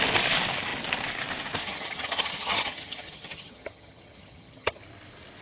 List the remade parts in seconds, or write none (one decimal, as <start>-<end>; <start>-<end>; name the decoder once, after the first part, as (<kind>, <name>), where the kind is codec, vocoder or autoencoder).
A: 1.6-4.8 (vocoder, HiFi-GAN)